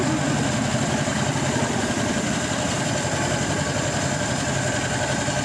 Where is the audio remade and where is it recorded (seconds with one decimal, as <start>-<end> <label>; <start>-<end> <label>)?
0.0-1.1 recorded; 1.1-4.3 remade; 4.3-5.4 recorded